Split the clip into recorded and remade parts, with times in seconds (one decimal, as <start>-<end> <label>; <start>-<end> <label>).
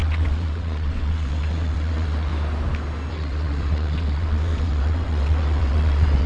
0.0-2.3 remade; 2.3-3.1 recorded; 3.1-6.3 remade